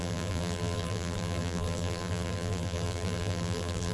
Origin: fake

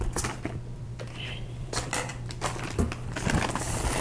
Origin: fake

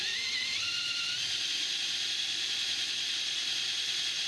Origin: fake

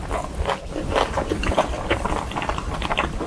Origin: fake